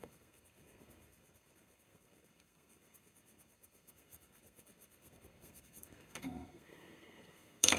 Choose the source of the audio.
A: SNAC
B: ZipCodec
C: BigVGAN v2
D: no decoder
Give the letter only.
A